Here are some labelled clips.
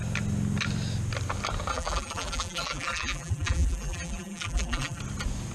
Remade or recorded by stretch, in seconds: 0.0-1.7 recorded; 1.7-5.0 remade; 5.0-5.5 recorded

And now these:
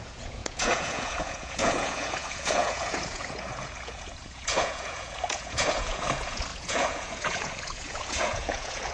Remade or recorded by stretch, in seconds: 0.0-8.9 remade

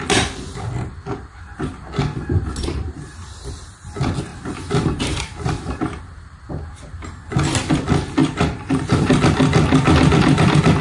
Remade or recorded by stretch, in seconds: 0.0-4.3 recorded; 4.3-6.0 remade; 6.0-8.2 recorded; 8.2-9.2 remade; 9.2-10.8 recorded

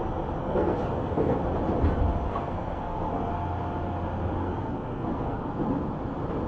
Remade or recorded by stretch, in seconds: 0.0-0.4 recorded; 0.4-1.4 remade; 1.4-2.3 recorded; 2.3-3.3 remade; 3.3-4.4 recorded; 4.4-5.5 remade; 5.5-6.5 recorded

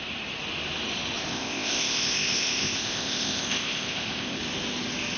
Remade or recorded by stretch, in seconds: 0.0-1.3 recorded; 1.3-4.4 remade; 4.4-5.2 recorded

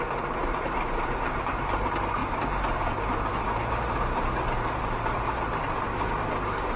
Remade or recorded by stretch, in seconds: 0.0-5.9 recorded; 5.9-6.8 remade

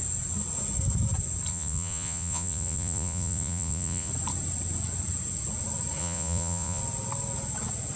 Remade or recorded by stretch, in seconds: 0.0-1.5 recorded; 1.5-4.1 remade; 4.1-6.0 recorded; 6.0-6.8 remade; 6.8-8.0 recorded